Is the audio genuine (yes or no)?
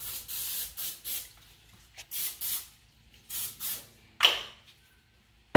yes